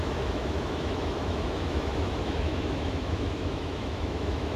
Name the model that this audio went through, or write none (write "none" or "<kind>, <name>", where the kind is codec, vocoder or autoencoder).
autoencoder, DAC-VAE